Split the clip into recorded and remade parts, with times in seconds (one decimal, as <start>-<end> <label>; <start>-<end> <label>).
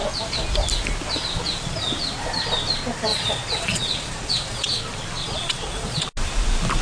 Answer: 0.0-3.1 recorded; 3.1-4.8 remade; 4.8-5.2 recorded; 5.2-6.0 remade; 6.0-6.8 recorded